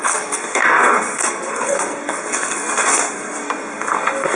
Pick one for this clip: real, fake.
fake